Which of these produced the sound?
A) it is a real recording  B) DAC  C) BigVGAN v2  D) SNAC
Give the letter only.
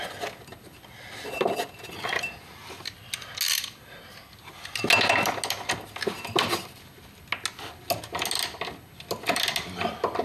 A